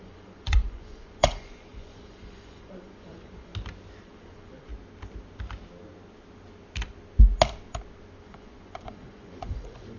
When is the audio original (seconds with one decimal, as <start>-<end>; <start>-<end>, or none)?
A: 3.5-4.0; 4.7-8.2